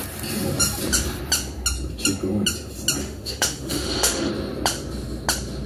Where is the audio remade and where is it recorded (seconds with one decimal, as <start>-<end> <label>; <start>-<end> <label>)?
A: 0.0-3.0 recorded; 3.0-4.3 remade; 4.3-5.7 recorded